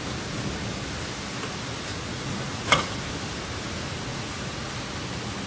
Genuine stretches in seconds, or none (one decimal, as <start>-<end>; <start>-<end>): 0.0-1.9; 2.9-4.1; 4.7-5.5